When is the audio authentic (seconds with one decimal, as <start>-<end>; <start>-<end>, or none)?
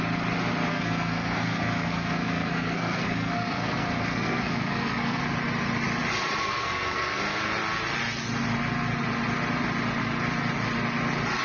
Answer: 0.0-0.7; 5.2-6.4; 7.2-11.4